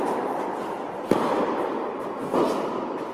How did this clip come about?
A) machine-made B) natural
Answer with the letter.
B